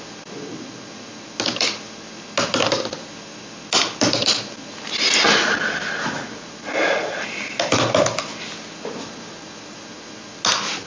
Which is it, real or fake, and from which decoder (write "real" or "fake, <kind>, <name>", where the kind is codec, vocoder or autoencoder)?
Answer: real